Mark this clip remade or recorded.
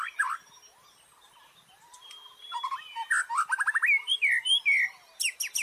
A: recorded